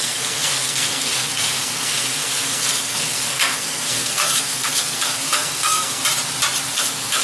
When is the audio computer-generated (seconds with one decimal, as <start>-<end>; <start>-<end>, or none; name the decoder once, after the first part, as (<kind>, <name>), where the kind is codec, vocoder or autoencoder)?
0.0-6.0 (codec, SNAC); 6.7-7.2